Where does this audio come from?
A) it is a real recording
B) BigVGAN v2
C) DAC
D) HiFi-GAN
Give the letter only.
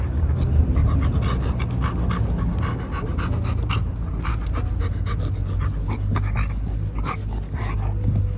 A